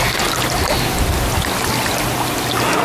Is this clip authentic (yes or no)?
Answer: yes